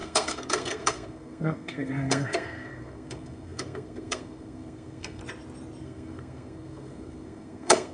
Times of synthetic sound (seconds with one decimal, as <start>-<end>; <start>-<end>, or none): 0.0-5.2; 5.8-7.9